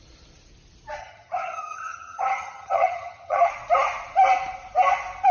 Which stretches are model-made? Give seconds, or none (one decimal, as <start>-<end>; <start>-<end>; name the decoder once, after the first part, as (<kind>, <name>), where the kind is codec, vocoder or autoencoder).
1.0-3.5 (vocoder, HiFi-GAN)

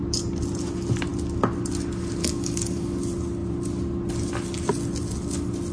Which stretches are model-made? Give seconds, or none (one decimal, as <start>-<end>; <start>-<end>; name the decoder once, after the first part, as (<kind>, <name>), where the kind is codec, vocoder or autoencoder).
2.2-3.0 (codec, DAC)

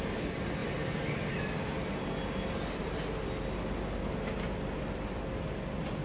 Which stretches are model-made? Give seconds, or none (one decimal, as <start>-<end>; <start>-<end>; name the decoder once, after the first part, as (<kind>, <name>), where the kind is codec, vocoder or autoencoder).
none

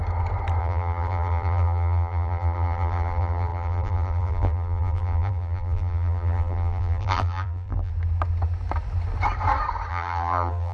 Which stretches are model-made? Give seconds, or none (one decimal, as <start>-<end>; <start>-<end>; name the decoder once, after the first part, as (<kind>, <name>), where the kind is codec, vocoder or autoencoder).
0.6-7.9 (vocoder, BigVGAN v2); 9.9-10.7

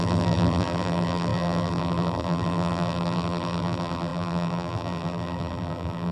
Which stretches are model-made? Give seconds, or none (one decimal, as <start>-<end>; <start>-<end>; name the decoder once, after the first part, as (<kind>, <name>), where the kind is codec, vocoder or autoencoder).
0.0-6.1 (vocoder, BigVGAN v2)

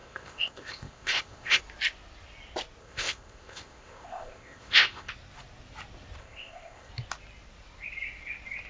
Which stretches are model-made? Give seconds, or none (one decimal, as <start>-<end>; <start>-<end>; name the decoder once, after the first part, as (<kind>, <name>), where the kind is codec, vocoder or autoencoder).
0.0-1.6 (codec, ZipCodec); 2.8-5.1; 6.2-6.9

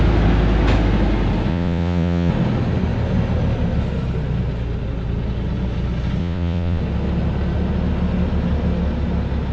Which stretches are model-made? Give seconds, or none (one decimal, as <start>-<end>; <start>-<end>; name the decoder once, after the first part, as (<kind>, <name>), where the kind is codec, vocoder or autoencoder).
1.5-2.3 (vocoder, Vocos); 6.2-6.8